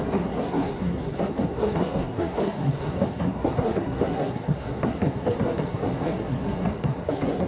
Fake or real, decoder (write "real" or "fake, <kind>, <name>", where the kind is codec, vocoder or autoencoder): fake, codec, SNAC